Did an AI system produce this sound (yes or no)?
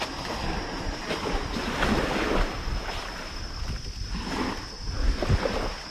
no